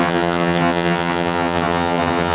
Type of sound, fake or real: fake